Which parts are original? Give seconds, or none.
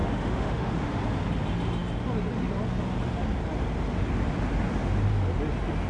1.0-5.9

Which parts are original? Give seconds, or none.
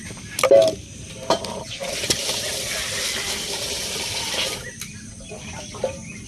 0.0-6.3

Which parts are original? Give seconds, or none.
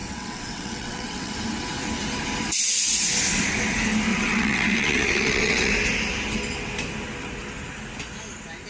1.3-4.1; 5.7-8.7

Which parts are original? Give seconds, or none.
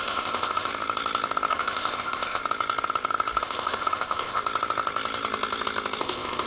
0.7-1.5; 2.4-3.4; 4.4-6.0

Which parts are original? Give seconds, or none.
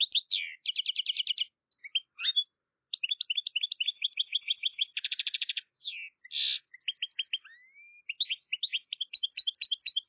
0.0-10.1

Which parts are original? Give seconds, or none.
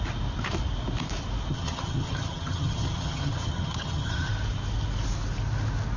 0.0-1.5; 4.3-6.0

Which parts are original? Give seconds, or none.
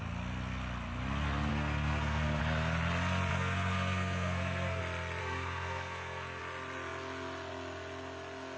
0.0-1.5; 2.4-3.3; 4.8-5.2; 6.4-8.6